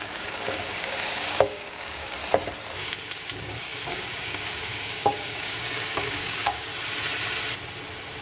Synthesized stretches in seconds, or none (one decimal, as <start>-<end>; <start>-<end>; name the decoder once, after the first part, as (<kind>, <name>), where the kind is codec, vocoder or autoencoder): 0.0-2.2 (codec, DAC); 2.7-6.7